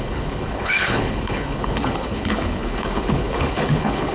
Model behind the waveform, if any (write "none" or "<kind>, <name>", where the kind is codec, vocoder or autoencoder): codec, HILCodec